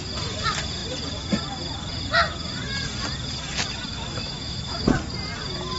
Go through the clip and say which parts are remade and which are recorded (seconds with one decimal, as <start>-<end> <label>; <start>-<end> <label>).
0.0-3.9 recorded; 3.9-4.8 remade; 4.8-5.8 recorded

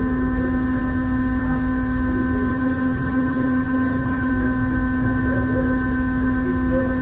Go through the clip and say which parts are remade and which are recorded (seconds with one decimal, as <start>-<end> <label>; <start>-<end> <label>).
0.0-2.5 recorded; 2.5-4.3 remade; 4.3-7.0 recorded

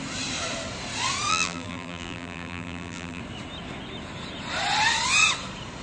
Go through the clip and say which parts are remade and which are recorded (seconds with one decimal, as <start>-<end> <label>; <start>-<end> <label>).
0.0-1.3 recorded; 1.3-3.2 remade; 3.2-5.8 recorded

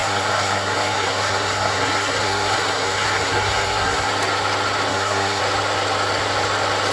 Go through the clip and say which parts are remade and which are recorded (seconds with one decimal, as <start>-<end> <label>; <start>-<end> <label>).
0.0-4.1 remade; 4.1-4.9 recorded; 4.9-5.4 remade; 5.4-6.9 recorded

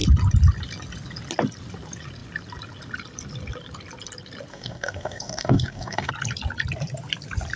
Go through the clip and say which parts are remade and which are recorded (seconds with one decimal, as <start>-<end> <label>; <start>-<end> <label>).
0.0-4.5 recorded; 4.5-6.1 remade; 6.1-7.6 recorded

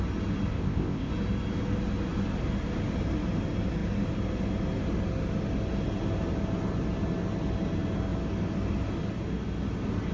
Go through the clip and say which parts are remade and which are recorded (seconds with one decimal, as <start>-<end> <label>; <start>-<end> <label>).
0.0-0.5 recorded; 0.5-1.1 remade; 1.1-10.1 recorded

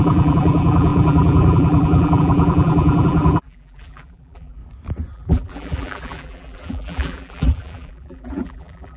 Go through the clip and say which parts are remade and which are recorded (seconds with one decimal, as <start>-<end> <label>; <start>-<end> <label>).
0.0-4.6 remade; 4.6-5.1 recorded; 5.1-9.0 remade